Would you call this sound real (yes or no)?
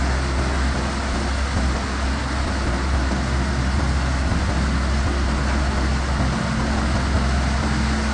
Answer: yes